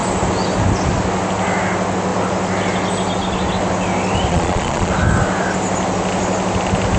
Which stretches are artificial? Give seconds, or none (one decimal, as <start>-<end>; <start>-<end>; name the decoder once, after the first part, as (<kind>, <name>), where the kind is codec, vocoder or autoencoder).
4.3-4.9 (vocoder, Vocos)